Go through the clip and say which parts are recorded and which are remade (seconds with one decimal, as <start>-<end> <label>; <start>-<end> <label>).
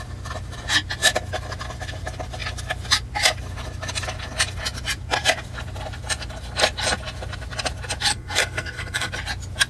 0.0-8.1 recorded; 8.1-9.1 remade; 9.1-9.7 recorded